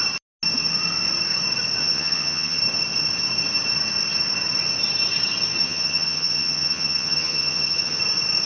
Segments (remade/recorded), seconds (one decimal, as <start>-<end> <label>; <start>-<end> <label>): 0.0-1.8 recorded; 1.8-2.6 remade; 2.6-5.6 recorded; 5.6-8.0 remade; 8.0-8.5 recorded